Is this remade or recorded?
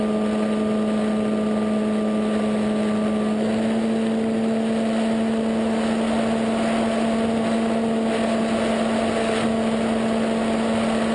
recorded